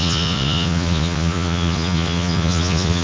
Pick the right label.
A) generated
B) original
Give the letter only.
A